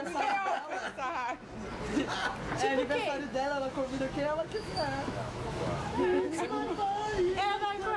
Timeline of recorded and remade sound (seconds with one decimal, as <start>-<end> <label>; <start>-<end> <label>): 0.0-0.9 recorded; 0.9-1.4 remade; 1.4-3.3 recorded; 3.3-8.0 remade